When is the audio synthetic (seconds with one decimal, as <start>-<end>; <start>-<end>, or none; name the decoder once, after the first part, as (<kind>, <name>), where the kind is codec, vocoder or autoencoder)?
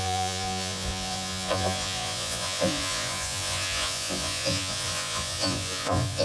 0.0-6.2 (vocoder, Vocos)